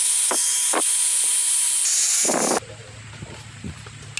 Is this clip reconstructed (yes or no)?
no